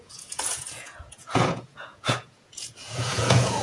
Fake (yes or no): yes